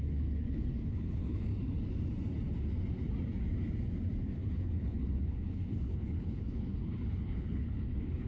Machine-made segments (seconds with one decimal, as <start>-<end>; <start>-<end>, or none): 0.0-1.5; 4.2-8.3